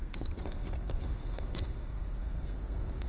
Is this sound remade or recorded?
remade